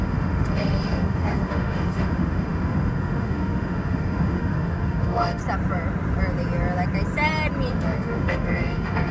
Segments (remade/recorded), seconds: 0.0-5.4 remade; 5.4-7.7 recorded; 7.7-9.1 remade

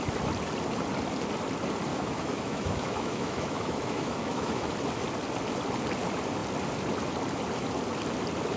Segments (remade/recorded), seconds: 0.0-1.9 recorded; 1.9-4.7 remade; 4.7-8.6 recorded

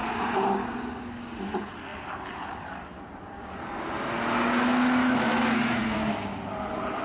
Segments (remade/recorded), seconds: 0.0-5.0 recorded; 5.0-5.8 remade; 5.8-7.0 recorded

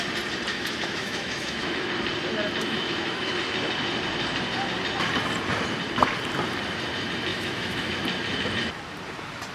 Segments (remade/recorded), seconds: 0.0-0.5 recorded; 0.5-1.9 remade; 1.9-2.6 recorded; 2.6-3.3 remade; 3.3-7.3 recorded; 7.3-7.9 remade; 7.9-9.5 recorded